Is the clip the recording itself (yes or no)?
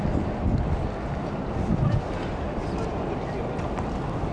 yes